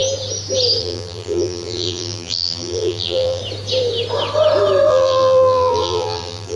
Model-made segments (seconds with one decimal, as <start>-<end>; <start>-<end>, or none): 0.8-3.4; 4.9-6.6